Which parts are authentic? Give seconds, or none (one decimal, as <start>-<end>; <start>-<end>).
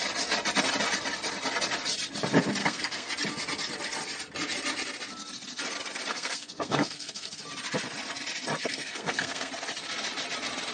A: 0.0-2.6; 3.1-6.1; 7.4-8.6; 9.5-10.7